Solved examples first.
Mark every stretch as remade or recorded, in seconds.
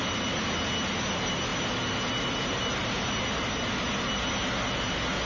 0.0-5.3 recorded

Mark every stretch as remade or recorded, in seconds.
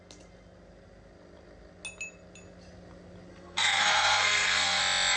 0.0-3.3 recorded; 3.3-4.8 remade; 4.8-5.2 recorded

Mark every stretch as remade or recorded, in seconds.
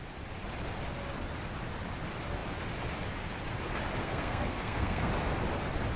0.0-4.0 recorded; 4.0-5.1 remade; 5.1-6.0 recorded